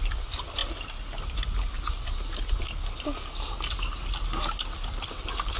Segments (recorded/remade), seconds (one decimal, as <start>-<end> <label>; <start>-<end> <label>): 0.0-5.6 recorded